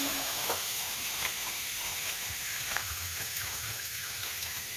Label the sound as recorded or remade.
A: remade